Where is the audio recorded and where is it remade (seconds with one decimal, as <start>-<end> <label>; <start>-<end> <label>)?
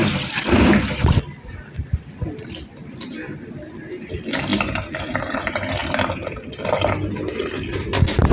0.0-3.5 remade; 3.5-8.3 recorded